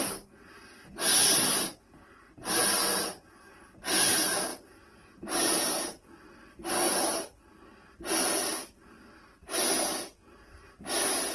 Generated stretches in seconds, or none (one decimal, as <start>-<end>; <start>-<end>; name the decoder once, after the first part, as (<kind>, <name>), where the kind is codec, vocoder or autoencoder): 4.5-6.1 (vocoder, BigVGAN v2)